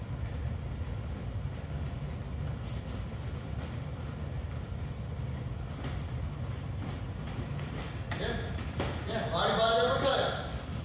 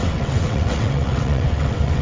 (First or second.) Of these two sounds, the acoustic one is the first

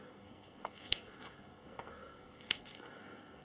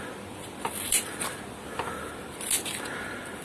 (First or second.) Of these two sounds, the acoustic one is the second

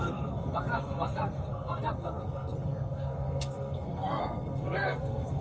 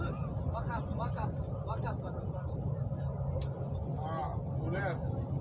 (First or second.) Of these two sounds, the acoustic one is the second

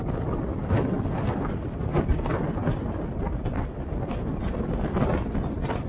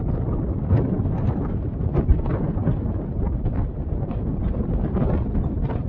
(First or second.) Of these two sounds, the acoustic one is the first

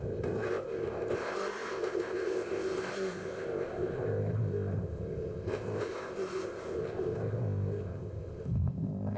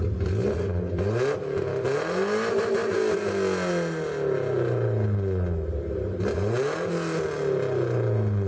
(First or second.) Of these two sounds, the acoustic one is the second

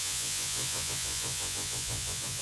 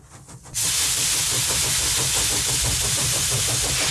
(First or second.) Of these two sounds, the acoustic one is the second